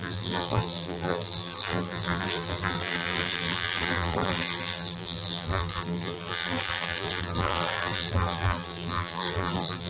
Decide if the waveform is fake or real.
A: fake